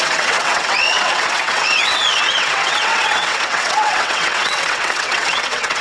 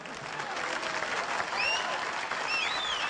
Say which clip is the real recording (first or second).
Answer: second